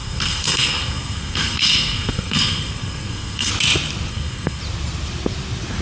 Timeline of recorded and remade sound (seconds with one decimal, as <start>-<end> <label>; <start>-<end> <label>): 0.0-3.5 remade; 3.5-4.1 recorded; 4.1-4.6 remade; 4.6-5.8 recorded